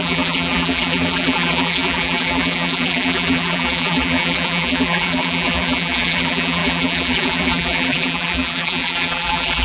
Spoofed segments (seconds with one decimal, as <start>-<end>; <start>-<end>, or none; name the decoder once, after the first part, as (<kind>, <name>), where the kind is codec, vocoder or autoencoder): 0.0-9.6 (vocoder, BigVGAN v2)